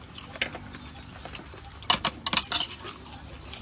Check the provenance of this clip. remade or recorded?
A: recorded